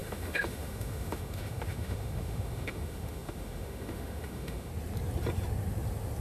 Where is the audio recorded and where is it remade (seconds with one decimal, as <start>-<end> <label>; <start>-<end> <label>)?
0.0-4.7 remade; 4.7-6.2 recorded